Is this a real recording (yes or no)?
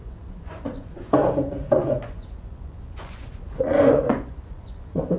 no